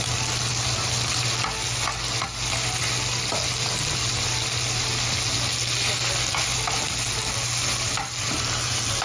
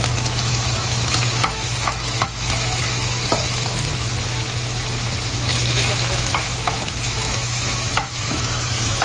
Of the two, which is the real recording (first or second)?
first